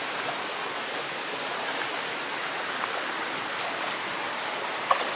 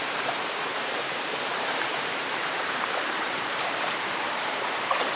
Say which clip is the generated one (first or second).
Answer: second